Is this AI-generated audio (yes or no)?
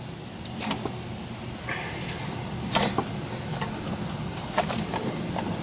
no